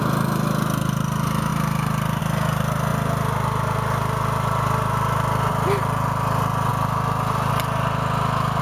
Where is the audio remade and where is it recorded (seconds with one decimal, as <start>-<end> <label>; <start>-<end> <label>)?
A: 0.0-8.6 recorded